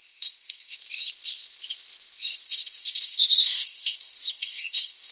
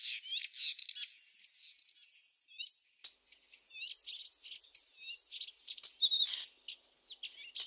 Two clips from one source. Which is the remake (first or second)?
first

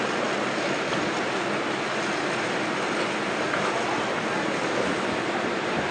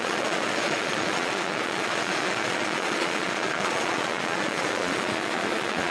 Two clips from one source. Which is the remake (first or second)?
second